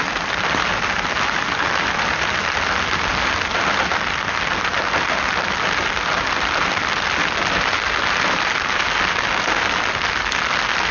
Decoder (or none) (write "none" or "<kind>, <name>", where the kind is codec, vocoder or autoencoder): none